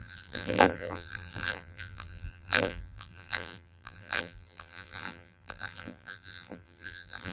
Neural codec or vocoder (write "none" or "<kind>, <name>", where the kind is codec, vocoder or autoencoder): vocoder, BigVGAN v2